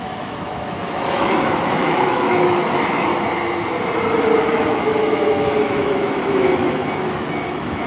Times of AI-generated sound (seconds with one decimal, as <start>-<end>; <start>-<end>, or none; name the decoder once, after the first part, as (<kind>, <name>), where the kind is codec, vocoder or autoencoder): 0.0-3.1 (autoencoder, DAC-VAE); 4.4-7.9